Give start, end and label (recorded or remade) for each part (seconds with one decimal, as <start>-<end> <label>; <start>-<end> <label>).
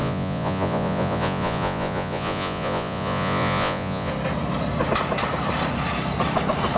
0.0-4.1 remade; 4.1-6.8 recorded